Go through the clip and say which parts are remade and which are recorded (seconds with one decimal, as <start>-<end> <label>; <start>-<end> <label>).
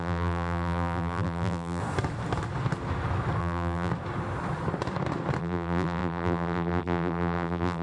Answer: 0.0-1.8 remade; 1.8-3.4 recorded; 3.4-3.9 remade; 3.9-5.4 recorded; 5.4-7.8 remade